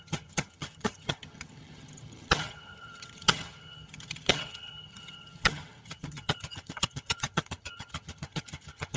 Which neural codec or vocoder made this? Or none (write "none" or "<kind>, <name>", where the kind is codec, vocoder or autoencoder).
vocoder, HiFi-GAN